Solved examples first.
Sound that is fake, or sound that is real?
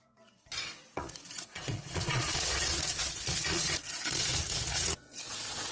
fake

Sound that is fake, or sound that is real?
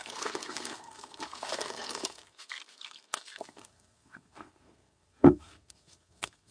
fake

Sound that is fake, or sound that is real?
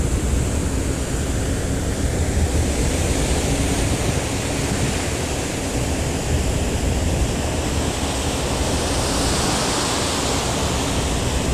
real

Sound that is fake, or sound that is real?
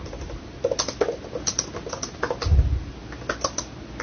real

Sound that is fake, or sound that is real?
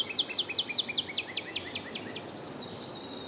fake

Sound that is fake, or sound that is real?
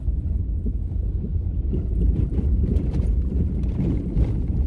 fake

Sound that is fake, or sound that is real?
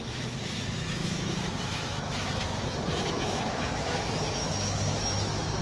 fake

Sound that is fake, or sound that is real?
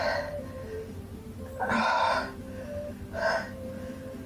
real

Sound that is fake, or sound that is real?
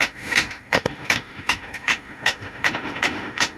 fake